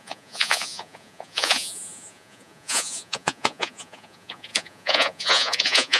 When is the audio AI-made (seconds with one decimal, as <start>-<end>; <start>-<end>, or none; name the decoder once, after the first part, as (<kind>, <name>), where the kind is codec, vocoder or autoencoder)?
0.0-6.0 (vocoder, Vocos)